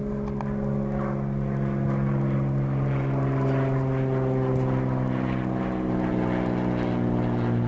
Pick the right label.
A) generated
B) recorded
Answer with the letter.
B